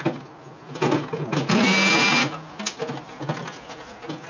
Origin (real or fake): real